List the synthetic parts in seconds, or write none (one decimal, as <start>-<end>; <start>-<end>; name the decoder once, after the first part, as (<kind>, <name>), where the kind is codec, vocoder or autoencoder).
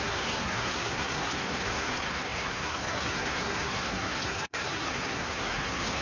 0.0-6.0 (codec, SNAC)